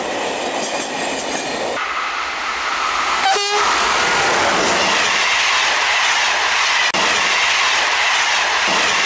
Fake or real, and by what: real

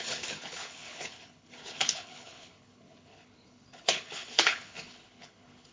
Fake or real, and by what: fake, codec, HILCodec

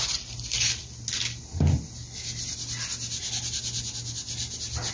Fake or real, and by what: real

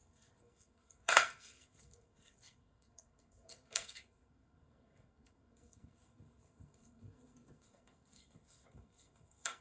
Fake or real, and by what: fake, codec, SNAC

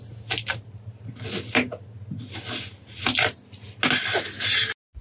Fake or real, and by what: real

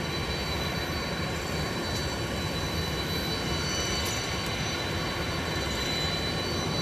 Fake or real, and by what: real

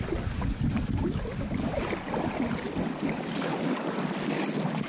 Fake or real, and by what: real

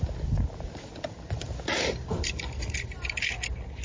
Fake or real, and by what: real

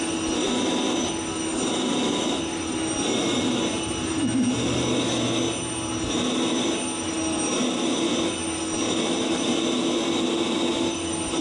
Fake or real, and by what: real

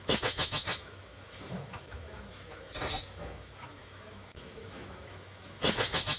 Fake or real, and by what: fake, autoencoder, DAC-VAE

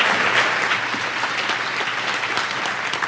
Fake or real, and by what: real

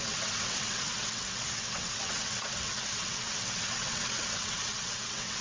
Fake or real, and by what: fake, vocoder, WaveNeXt